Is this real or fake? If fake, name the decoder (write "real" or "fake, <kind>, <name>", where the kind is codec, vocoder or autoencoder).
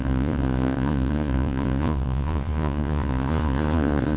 fake, vocoder, Vocos